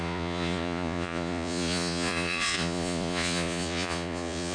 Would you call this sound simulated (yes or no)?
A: yes